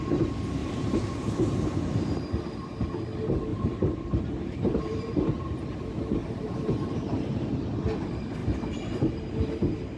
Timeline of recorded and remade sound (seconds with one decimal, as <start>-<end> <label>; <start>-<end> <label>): 0.0-0.6 recorded; 0.6-2.2 remade; 2.2-3.5 recorded; 3.5-5.6 remade; 5.6-6.2 recorded; 6.2-7.1 remade; 7.1-10.0 recorded